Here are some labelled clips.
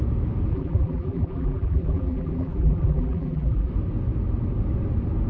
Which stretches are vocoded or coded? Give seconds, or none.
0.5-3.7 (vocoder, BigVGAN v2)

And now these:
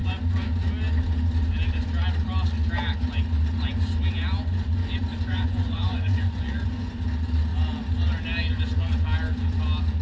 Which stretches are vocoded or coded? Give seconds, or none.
5.1-7.0 (vocoder, Vocos)

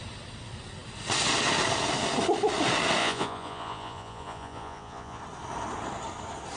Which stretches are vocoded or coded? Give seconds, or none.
3.0-5.2 (vocoder, Vocos)

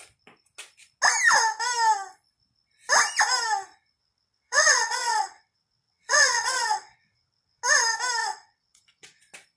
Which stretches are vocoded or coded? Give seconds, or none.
4.0-7.6 (vocoder, WaveNeXt); 8.2-9.2

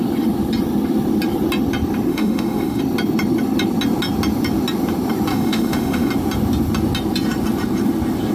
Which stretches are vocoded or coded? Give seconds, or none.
2.1-2.8 (autoencoder, DAC-VAE); 5.3-6.1